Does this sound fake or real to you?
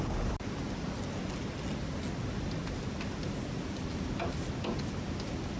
real